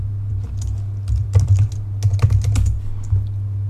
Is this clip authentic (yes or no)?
yes